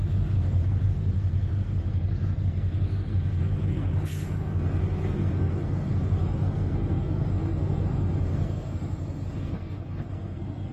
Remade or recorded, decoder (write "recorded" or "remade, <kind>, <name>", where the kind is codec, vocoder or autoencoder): remade, codec, SNAC